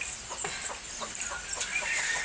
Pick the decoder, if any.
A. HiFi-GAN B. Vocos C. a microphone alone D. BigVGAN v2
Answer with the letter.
C